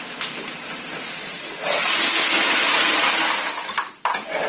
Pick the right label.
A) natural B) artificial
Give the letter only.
A